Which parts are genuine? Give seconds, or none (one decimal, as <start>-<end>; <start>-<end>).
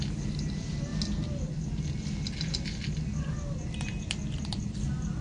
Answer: 0.0-5.2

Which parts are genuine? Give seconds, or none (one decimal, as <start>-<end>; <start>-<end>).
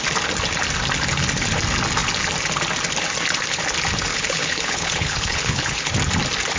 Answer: 0.0-4.1; 5.9-6.6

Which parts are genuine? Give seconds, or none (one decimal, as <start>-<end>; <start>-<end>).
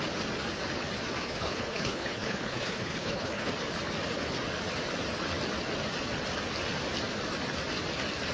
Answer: 0.0-1.2; 3.5-8.3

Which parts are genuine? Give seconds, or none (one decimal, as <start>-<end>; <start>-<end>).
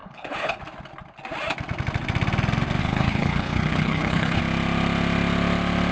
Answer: 0.6-2.8; 4.4-5.9